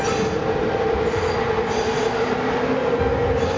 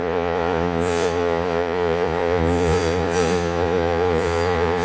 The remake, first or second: second